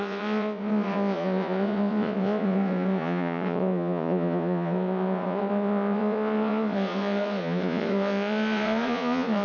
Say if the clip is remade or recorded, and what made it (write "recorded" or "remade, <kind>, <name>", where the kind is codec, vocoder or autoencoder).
remade, vocoder, Vocos